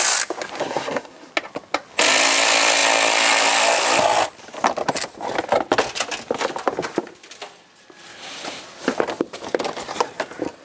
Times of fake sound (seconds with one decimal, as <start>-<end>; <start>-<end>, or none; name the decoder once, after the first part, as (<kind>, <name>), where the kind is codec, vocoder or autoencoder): 0.6-1.3 (codec, SNAC)

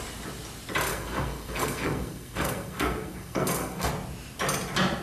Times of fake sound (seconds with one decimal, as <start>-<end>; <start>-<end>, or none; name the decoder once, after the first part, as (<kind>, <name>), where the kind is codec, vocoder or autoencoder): 0.9-3.9 (codec, SNAC)

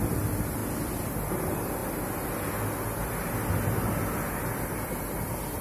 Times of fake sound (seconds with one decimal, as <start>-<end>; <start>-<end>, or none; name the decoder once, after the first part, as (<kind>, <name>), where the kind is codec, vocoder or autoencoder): none